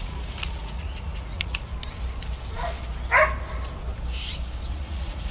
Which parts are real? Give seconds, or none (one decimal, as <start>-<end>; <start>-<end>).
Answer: 1.7-4.7